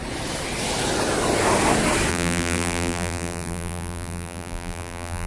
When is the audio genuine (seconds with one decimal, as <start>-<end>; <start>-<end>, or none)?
0.0-2.1